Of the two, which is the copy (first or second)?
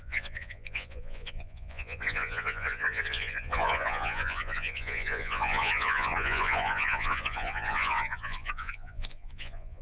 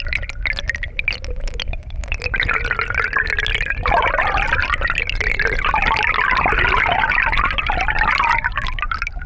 first